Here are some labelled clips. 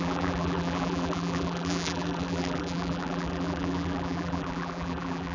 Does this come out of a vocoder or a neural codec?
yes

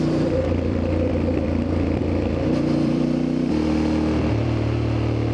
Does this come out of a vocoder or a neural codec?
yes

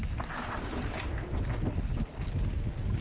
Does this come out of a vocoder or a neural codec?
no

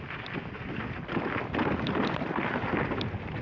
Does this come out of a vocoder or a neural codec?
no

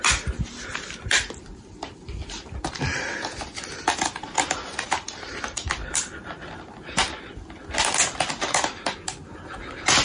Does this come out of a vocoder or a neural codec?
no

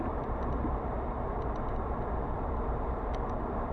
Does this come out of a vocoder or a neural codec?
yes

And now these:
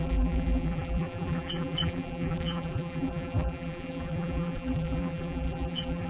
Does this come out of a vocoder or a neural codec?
yes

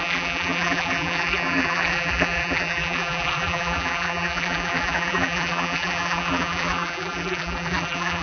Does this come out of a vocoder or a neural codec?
yes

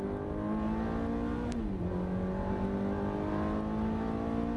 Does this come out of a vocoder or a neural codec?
no